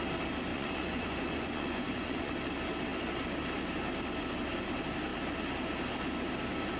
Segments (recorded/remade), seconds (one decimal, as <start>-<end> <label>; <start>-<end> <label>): 0.0-0.5 recorded; 0.5-2.3 remade; 2.3-6.8 recorded

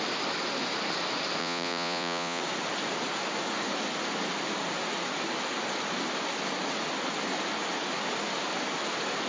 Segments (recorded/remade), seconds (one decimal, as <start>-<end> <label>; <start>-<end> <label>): 0.0-1.4 recorded; 1.4-2.4 remade; 2.4-9.3 recorded

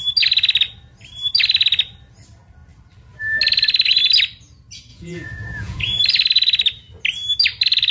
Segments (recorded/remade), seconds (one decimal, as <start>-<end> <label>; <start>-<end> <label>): 0.0-4.9 recorded; 4.9-6.0 remade; 6.0-7.9 recorded

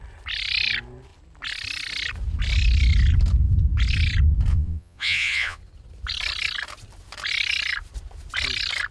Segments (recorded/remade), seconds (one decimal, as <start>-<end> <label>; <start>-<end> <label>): 0.0-4.5 recorded; 4.5-5.6 remade; 5.6-8.9 recorded